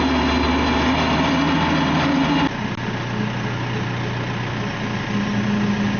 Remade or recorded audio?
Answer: recorded